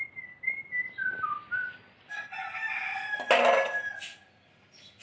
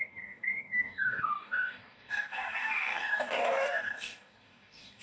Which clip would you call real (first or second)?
first